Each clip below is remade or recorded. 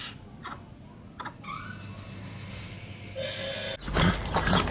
recorded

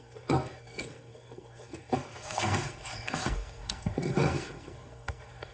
remade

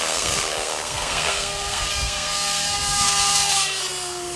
remade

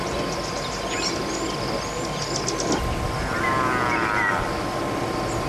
recorded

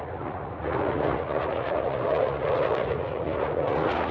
remade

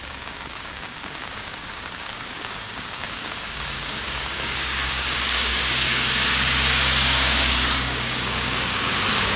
remade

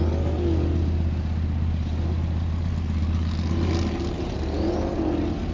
recorded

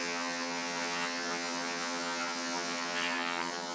remade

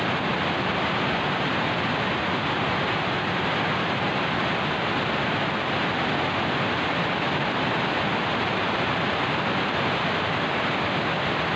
recorded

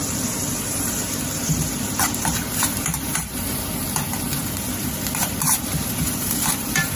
remade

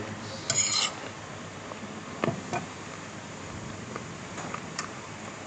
recorded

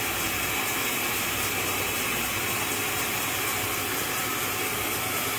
remade